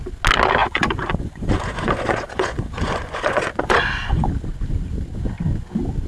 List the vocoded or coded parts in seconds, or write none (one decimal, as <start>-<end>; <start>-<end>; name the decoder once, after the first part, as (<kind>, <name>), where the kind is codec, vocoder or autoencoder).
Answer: 0.6-4.3 (vocoder, Vocos)

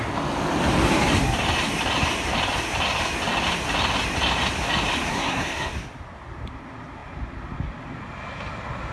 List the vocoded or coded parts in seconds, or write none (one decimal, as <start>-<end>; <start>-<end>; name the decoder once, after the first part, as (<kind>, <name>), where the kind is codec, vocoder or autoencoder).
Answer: 5.1-5.7 (codec, SNAC)

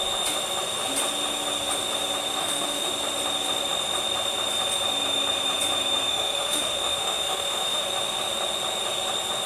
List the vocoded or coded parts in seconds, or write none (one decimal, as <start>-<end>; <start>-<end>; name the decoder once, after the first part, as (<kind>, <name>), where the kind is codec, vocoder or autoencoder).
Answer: 2.4-2.9 (autoencoder, DAC-VAE); 6.1-7.8